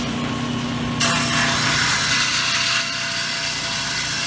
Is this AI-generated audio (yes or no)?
no